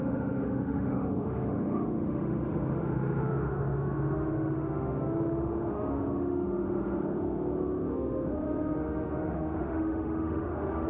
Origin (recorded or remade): remade